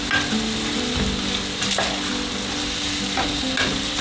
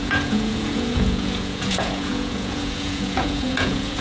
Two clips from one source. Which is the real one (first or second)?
first